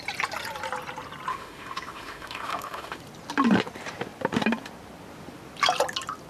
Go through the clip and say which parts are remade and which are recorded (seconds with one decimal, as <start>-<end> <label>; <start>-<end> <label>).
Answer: 0.0-1.3 recorded; 1.3-3.0 remade; 3.0-6.3 recorded